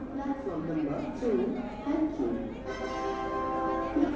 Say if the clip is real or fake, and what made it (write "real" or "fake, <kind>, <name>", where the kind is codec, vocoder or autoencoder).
real